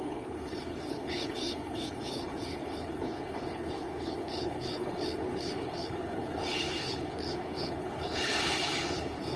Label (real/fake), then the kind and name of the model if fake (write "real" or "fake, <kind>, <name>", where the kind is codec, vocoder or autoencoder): fake, codec, HILCodec